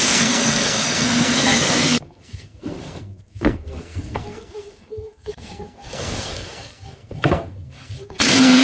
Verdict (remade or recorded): remade